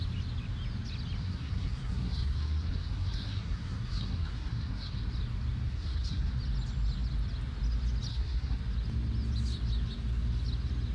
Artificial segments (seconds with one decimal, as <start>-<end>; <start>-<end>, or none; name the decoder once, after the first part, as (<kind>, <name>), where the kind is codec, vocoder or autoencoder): 1.2-5.0 (codec, SNAC); 5.7-6.3; 8.1-8.6